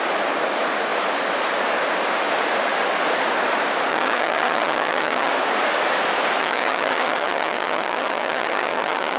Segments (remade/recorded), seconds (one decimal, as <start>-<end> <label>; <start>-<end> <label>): 0.0-3.9 recorded; 3.9-5.3 remade; 5.3-6.4 recorded; 6.4-9.2 remade